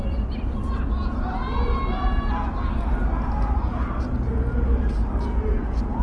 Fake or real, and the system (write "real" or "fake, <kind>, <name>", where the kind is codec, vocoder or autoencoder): real